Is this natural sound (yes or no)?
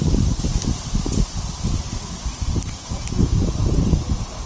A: yes